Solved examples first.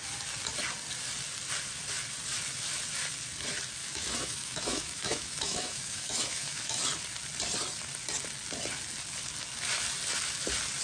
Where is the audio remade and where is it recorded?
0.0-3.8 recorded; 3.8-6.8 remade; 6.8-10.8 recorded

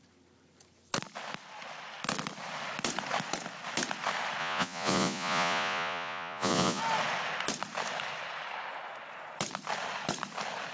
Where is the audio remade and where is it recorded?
0.0-4.4 recorded; 4.4-6.8 remade; 6.8-10.7 recorded

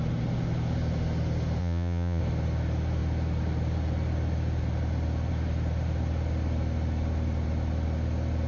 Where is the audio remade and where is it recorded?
0.0-1.6 recorded; 1.6-2.2 remade; 2.2-8.5 recorded

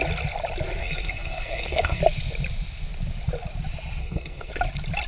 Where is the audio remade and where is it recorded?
0.0-0.8 recorded; 0.8-2.0 remade; 2.0-4.0 recorded; 4.0-4.5 remade; 4.5-5.1 recorded